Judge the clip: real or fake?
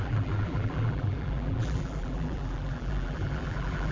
fake